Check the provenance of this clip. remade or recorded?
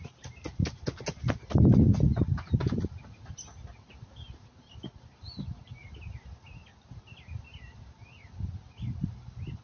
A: recorded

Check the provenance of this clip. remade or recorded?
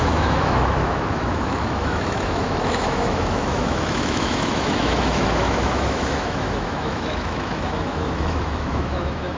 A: remade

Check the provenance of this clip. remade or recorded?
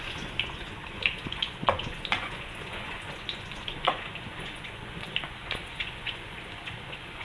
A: remade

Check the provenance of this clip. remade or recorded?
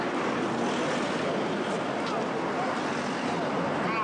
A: recorded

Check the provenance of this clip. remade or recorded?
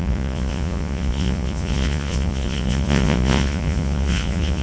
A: remade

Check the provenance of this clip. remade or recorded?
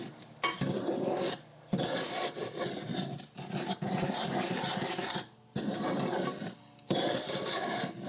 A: recorded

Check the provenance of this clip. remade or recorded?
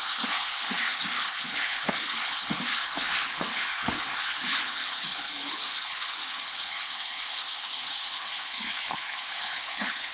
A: remade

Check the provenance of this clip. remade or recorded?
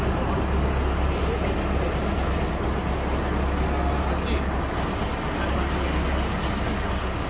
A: recorded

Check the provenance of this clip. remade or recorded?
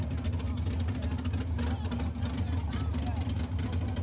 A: recorded